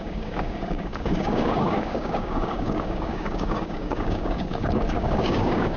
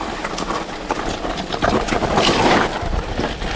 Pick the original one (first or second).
second